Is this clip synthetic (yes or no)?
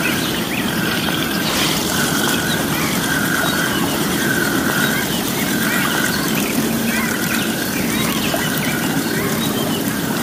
yes